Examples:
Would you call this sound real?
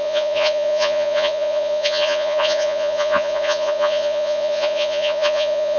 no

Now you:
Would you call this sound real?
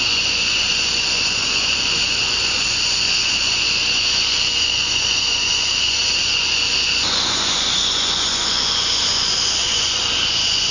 no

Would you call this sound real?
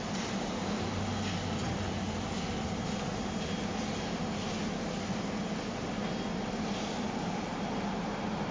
yes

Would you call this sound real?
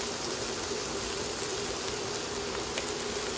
yes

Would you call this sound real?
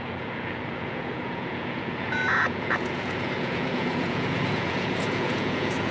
no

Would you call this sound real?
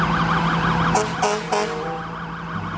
yes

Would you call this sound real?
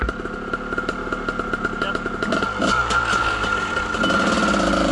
yes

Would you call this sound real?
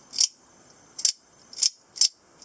yes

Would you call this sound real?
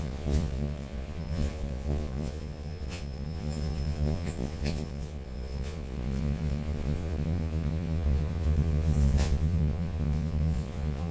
no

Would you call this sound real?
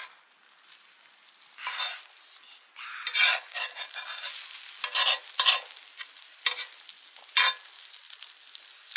yes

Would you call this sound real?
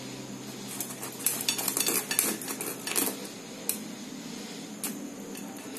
yes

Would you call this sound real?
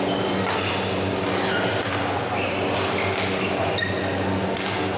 yes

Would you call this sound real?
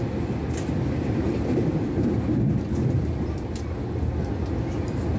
yes